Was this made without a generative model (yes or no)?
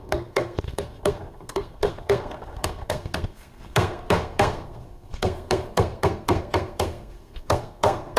no